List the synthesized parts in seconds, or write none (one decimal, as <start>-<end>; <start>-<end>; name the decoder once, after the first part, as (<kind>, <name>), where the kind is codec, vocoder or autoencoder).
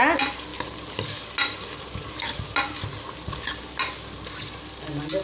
none